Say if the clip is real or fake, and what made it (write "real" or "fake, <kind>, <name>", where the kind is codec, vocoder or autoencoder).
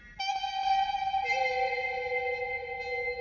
real